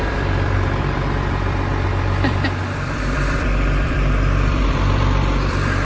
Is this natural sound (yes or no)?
no